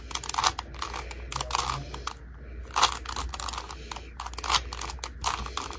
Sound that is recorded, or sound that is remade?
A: recorded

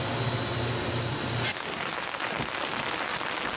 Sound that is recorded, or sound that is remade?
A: recorded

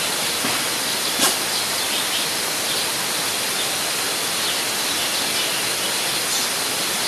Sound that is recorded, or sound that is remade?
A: recorded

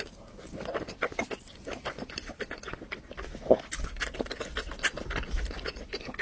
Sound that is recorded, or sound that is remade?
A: recorded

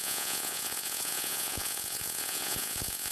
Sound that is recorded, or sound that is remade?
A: remade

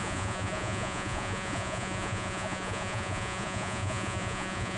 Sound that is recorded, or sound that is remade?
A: remade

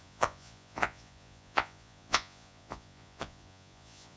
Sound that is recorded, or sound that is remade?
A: remade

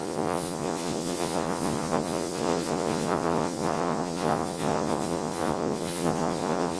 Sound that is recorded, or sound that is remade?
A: remade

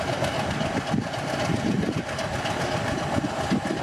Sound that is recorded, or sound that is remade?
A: recorded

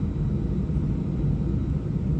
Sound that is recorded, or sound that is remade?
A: recorded